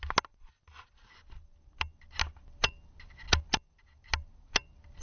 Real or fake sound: real